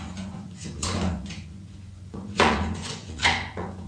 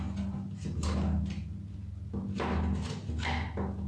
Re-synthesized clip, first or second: first